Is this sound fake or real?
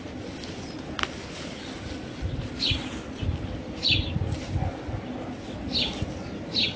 real